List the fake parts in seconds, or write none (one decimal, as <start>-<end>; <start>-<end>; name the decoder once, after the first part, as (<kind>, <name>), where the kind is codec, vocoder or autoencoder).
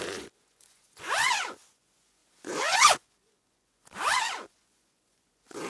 0.0-5.7 (vocoder, Vocos)